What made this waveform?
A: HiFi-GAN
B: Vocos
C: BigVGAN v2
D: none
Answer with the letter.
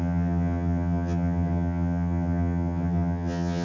A